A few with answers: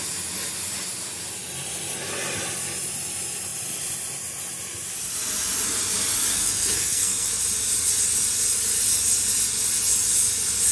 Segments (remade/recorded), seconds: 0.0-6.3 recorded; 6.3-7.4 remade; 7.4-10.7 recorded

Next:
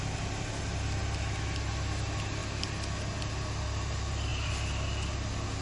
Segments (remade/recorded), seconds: 0.0-5.6 recorded

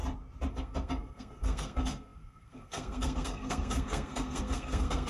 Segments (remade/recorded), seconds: 0.0-0.5 recorded; 0.5-5.1 remade

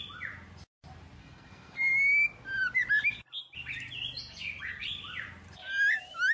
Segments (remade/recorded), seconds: 0.0-1.2 recorded; 1.2-1.9 remade; 1.9-6.3 recorded

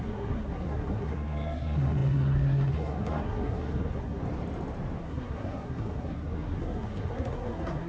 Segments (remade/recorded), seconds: 0.0-4.2 remade; 4.2-5.0 recorded; 5.0-7.9 remade

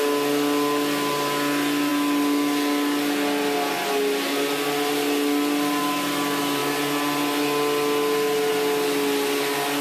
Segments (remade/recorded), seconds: 0.0-9.8 recorded

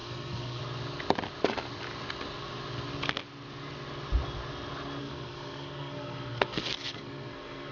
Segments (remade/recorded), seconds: 0.0-0.6 remade; 0.6-5.0 recorded; 5.0-7.7 remade

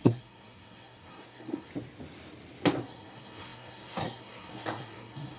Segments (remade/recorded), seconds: 0.0-1.7 remade; 1.7-2.8 recorded; 2.8-5.4 remade